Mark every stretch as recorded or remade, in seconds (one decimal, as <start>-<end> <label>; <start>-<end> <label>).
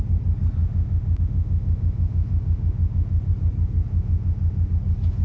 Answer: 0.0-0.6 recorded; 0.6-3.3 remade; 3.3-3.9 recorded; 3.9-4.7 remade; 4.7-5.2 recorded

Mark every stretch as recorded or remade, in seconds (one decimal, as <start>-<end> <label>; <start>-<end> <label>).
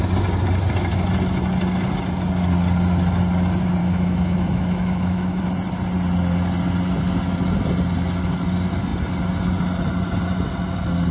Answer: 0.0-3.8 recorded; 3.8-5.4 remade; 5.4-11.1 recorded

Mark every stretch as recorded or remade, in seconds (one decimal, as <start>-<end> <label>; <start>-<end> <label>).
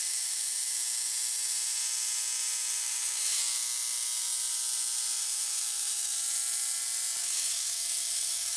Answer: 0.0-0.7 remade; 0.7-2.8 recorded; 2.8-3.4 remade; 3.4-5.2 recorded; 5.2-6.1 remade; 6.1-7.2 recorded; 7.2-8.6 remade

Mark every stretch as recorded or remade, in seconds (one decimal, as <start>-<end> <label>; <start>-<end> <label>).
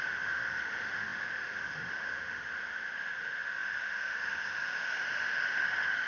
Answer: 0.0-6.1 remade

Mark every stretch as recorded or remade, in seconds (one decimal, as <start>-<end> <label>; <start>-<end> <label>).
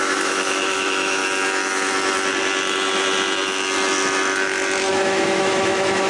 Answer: 0.0-1.2 remade; 1.2-4.9 recorded; 4.9-6.1 remade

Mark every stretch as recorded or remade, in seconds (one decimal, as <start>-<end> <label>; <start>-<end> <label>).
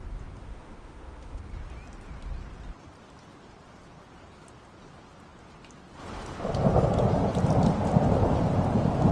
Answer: 0.0-0.4 recorded; 0.4-1.4 remade; 1.4-9.1 recorded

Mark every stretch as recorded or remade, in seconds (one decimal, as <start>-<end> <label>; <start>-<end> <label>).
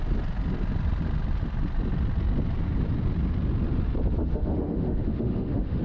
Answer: 0.0-4.2 recorded; 4.2-5.8 remade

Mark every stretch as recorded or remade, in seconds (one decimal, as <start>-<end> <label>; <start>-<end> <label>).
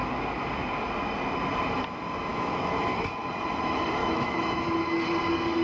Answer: 0.0-2.3 recorded; 2.3-2.8 remade; 2.8-4.0 recorded; 4.0-4.6 remade; 4.6-5.6 recorded